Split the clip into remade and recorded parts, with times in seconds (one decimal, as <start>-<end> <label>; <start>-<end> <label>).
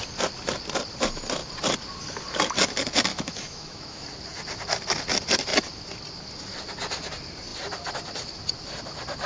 0.0-3.1 recorded; 3.1-4.0 remade; 4.0-9.3 recorded